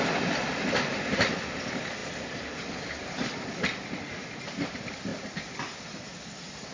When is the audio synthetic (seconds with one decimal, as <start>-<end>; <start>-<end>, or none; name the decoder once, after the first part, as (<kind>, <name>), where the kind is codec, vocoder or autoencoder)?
5.1-6.7 (vocoder, BigVGAN v2)